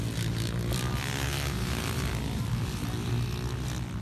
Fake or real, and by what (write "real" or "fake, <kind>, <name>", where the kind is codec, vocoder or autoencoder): real